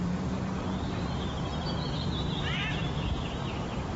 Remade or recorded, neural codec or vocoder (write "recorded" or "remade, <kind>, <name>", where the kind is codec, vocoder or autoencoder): recorded